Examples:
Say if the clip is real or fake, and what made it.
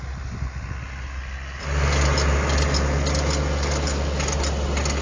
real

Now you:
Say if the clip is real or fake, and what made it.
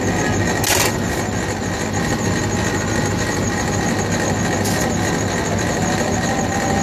real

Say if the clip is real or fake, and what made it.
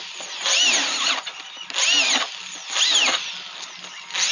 real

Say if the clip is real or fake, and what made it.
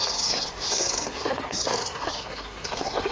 fake, codec, SNAC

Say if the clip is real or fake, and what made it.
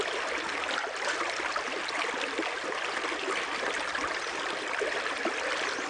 real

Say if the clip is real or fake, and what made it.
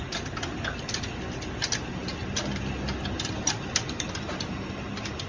real